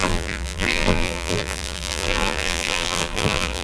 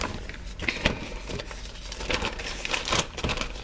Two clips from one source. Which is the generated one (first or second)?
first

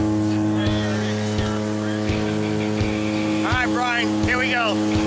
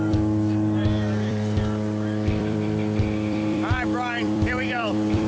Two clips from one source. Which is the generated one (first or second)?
second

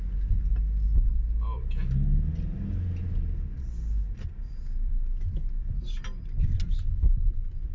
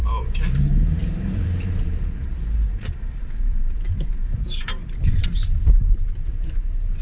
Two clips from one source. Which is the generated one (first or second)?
second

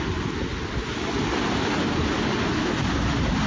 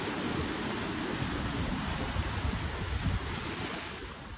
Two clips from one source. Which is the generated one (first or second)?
second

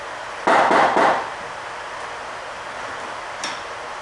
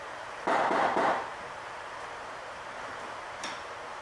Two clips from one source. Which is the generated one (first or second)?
second